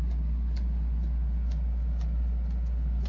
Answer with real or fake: real